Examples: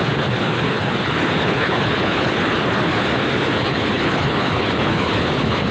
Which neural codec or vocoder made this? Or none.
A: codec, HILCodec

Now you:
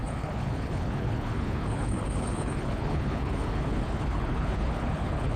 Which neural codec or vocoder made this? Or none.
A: codec, HILCodec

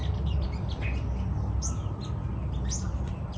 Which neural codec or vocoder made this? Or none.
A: none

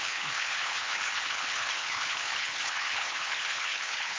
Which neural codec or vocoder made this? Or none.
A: codec, HILCodec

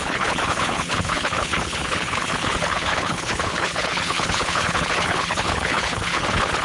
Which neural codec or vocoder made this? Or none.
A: codec, HILCodec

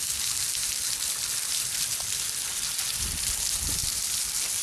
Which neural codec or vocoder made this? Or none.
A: none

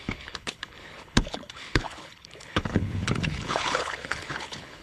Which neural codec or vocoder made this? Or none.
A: codec, HILCodec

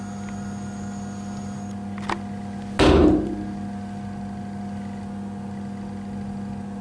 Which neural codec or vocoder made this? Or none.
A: none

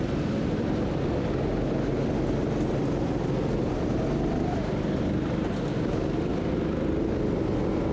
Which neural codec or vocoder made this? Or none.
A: none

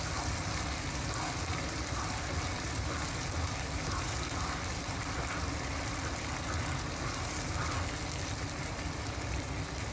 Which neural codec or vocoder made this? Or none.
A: none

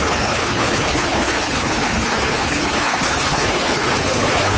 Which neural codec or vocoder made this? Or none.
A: codec, HILCodec